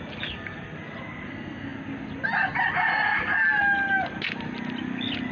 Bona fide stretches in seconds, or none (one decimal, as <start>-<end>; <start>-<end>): 0.0-5.3